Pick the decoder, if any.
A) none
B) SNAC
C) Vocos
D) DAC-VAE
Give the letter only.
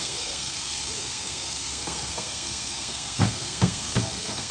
B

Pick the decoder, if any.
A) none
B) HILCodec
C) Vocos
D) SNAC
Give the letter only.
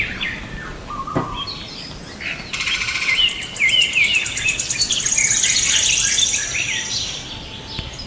A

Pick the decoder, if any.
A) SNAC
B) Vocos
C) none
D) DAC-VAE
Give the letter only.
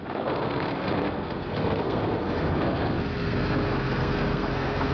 A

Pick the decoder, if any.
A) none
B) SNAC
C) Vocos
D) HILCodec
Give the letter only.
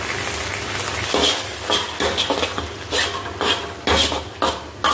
A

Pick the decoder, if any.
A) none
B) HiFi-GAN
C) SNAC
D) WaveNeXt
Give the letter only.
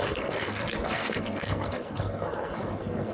C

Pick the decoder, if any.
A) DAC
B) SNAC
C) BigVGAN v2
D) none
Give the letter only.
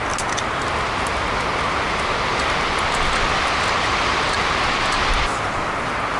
D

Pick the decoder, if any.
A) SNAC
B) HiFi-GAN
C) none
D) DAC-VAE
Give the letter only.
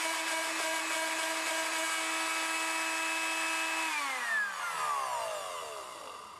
C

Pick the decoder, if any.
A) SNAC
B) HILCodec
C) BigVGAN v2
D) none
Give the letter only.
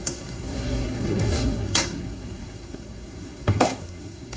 A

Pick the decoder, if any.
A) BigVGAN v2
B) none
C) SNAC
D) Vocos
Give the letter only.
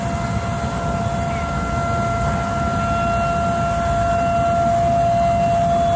B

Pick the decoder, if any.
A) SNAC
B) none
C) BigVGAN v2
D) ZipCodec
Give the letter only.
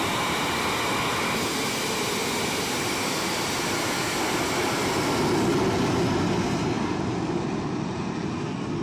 B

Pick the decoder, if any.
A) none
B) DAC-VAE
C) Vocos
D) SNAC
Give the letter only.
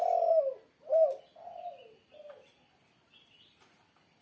A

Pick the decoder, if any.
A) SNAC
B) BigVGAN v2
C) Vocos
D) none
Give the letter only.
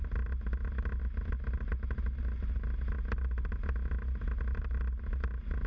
D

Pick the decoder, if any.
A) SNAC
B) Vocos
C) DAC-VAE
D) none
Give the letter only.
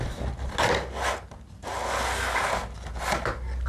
D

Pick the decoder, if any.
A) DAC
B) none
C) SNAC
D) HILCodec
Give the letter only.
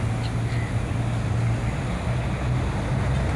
B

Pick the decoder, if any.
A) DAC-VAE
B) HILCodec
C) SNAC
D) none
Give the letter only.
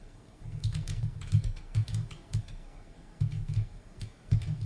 C